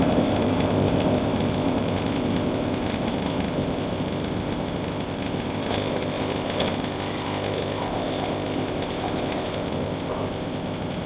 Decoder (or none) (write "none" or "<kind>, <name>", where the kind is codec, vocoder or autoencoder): codec, ZipCodec